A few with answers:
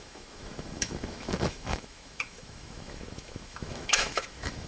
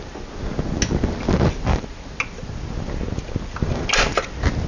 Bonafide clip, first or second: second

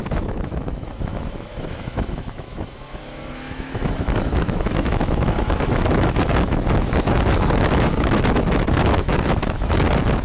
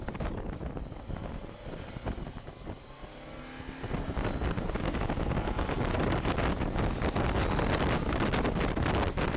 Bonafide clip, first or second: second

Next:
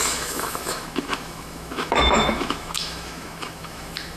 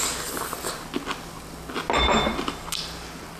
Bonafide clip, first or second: second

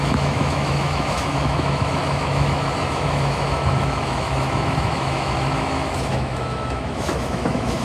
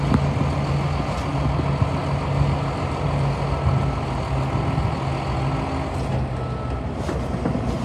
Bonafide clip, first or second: second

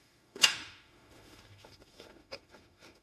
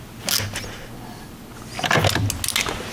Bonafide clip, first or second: second